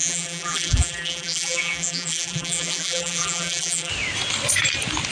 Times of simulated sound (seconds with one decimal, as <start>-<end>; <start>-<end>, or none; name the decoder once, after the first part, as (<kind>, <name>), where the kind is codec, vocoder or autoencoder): 0.0-3.9 (vocoder, BigVGAN v2)